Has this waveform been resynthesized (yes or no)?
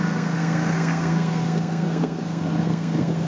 yes